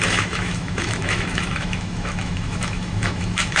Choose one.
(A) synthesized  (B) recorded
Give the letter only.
A